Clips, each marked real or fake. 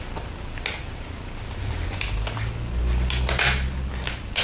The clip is real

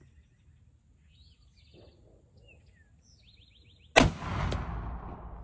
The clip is real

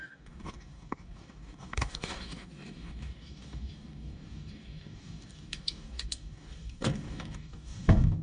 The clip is fake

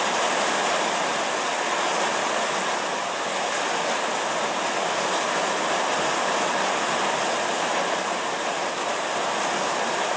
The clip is real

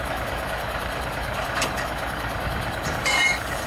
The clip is fake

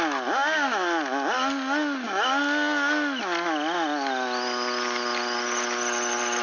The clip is real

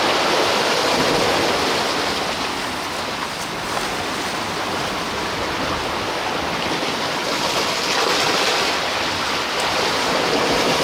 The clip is real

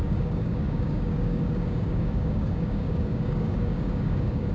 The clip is fake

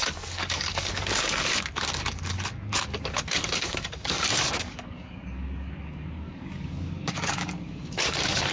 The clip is fake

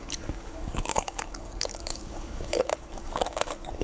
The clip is fake